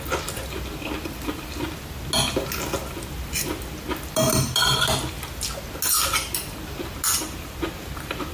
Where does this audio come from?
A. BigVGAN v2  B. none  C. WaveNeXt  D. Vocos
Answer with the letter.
B